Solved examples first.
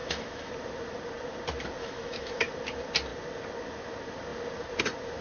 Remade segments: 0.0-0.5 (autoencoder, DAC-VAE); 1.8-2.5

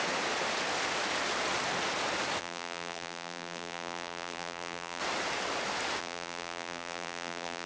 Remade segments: 2.4-5.0 (vocoder, BigVGAN v2); 6.0-7.7

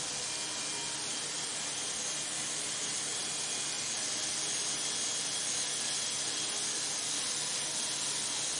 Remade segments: none